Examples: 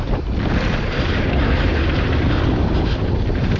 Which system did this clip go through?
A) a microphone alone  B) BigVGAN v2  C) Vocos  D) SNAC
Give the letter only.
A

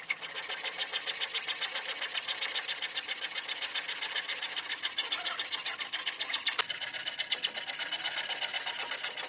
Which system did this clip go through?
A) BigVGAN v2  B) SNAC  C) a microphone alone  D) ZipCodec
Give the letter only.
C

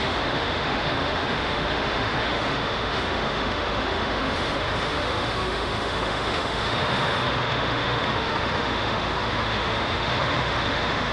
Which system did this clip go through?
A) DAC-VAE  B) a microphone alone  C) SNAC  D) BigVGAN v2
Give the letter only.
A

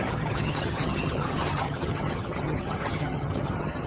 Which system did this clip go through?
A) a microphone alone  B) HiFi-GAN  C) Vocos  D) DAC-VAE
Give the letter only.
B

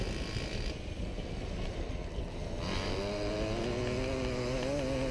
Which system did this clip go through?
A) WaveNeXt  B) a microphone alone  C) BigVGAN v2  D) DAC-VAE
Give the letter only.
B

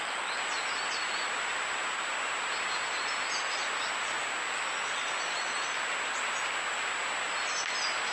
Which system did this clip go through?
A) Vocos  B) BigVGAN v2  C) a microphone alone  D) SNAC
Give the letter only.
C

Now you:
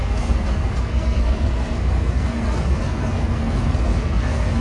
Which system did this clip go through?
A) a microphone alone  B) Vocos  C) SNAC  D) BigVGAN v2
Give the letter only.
C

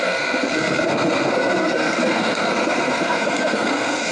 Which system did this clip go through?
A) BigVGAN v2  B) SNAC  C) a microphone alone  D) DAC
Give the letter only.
B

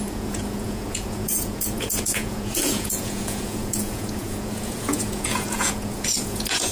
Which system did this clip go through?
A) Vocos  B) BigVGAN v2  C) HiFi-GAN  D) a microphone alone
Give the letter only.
A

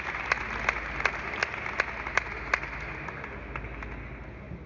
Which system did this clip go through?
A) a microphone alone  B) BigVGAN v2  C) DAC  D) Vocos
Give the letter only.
A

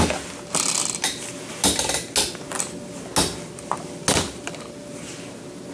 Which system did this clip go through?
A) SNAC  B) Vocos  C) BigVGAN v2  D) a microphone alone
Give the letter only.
D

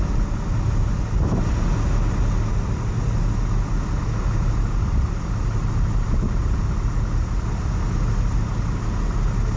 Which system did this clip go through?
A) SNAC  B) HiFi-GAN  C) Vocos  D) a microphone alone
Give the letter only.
D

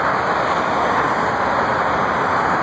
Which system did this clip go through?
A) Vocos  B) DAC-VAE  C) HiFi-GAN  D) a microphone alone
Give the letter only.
D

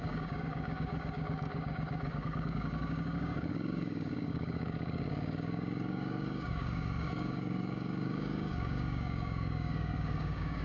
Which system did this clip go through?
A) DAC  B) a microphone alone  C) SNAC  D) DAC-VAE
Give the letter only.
A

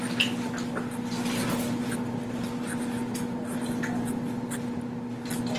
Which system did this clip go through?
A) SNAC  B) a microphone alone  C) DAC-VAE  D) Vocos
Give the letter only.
B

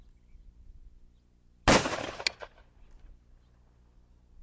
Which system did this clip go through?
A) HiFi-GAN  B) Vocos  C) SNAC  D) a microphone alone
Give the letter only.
D